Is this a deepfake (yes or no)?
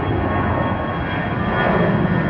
no